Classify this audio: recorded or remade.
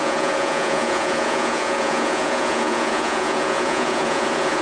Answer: remade